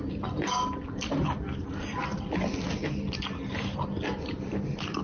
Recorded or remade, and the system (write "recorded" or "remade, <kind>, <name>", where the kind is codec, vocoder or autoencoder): recorded